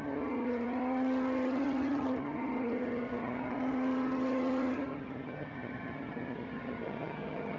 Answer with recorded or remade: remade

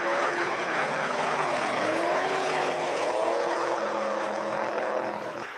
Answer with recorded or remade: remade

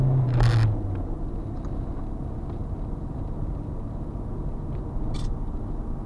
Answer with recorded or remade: recorded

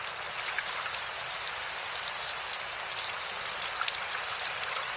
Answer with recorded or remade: recorded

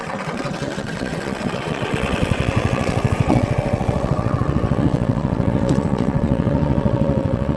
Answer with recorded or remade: remade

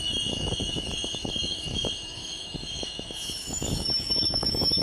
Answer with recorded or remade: remade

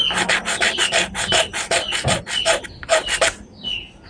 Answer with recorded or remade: recorded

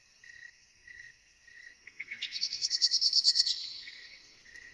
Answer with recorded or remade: remade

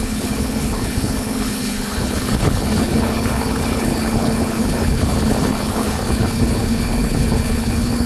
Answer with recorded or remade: remade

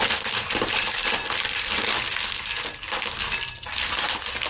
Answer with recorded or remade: recorded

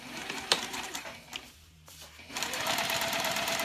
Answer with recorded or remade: remade